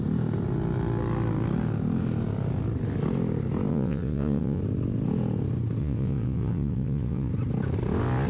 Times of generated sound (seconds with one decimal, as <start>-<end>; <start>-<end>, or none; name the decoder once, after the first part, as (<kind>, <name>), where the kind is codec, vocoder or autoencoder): 3.7-4.6 (vocoder, WaveNeXt); 5.8-7.3